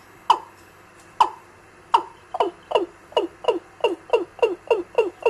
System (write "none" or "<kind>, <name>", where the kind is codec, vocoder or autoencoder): none